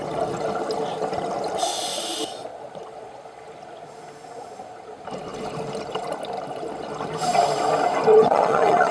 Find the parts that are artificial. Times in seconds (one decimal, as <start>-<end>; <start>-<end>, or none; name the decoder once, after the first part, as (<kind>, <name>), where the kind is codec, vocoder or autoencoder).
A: 2.5-3.5 (vocoder, Vocos); 8.1-8.9